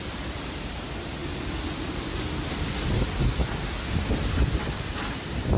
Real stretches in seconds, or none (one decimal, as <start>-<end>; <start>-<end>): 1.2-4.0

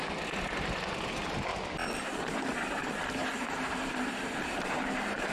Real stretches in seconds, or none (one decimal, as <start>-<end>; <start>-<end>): 0.0-1.5; 4.7-5.3

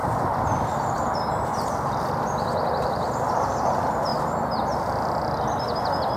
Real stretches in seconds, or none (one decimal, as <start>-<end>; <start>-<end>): 0.0-0.8; 1.5-2.7; 4.1-6.2

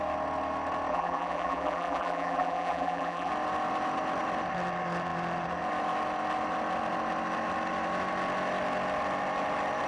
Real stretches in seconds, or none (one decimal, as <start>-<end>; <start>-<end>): 0.0-0.9; 3.3-9.9

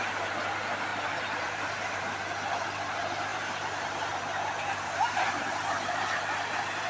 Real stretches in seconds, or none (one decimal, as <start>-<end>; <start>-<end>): 0.0-0.9; 2.0-3.3; 6.2-6.9

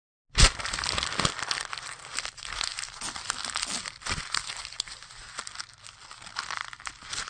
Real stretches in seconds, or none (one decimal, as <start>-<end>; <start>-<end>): 0.0-7.3